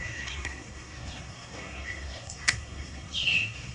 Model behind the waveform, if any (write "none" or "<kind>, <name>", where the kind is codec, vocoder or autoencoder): codec, SNAC